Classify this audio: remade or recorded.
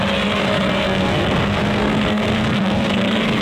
remade